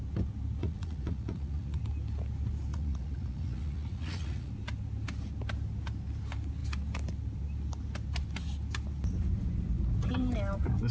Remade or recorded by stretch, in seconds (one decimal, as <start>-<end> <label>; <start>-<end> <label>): 0.0-0.6 recorded; 0.6-1.8 remade; 1.8-2.7 recorded; 2.7-4.5 remade; 4.5-10.9 recorded